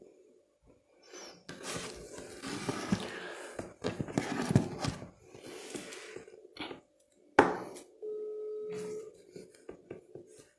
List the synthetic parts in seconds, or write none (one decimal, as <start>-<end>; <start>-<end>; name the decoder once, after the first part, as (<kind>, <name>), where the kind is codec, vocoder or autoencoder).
none